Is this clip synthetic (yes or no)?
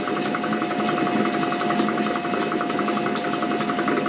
no